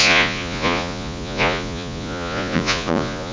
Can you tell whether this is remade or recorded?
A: remade